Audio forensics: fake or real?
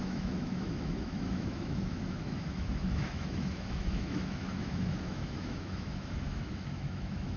fake